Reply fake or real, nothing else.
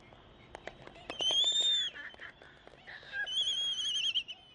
real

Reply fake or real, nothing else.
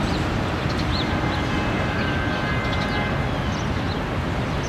real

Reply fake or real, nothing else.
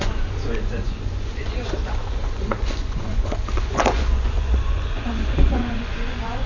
fake